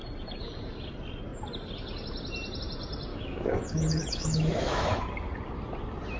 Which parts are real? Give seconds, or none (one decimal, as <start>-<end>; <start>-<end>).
0.0-3.1; 5.1-6.2